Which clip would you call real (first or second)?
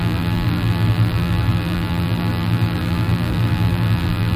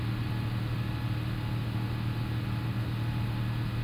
second